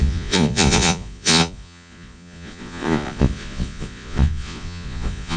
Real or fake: fake